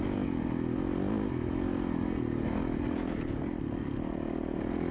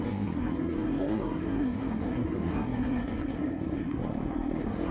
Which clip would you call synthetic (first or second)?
second